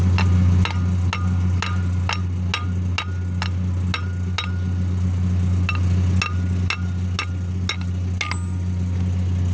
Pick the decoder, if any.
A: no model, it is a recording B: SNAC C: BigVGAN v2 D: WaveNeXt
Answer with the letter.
A